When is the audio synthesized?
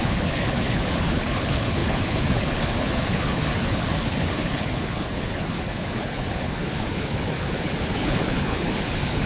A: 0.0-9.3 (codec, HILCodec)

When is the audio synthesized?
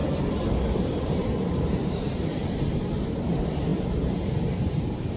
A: 0.8-2.4 (vocoder, BigVGAN v2); 3.3-5.2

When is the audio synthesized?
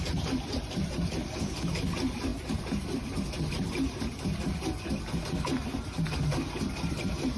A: none